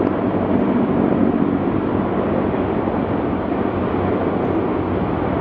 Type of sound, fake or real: real